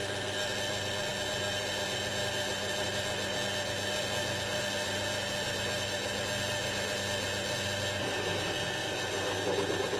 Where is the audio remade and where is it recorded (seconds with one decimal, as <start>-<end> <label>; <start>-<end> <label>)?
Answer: 0.0-10.0 recorded

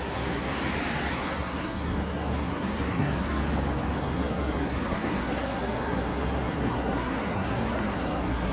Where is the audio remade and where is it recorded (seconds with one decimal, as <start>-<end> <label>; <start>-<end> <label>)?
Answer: 0.0-0.5 remade; 0.5-1.1 recorded; 1.1-3.4 remade; 3.4-4.0 recorded; 4.0-8.5 remade

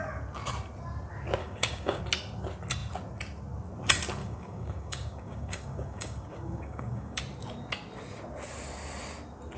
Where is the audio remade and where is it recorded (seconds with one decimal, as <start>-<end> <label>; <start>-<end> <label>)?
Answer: 0.0-1.4 recorded; 1.4-2.0 remade; 2.0-4.2 recorded; 4.2-7.2 remade; 7.2-9.6 recorded